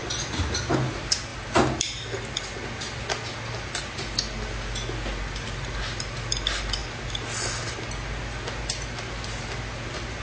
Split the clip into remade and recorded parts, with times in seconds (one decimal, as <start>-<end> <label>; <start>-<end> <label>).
0.0-10.2 recorded